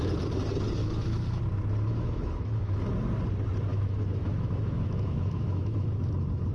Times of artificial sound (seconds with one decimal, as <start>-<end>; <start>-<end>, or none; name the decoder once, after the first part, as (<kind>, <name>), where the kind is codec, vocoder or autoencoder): 0.8-1.4 (autoencoder, DAC-VAE); 1.9-2.9; 3.7-6.1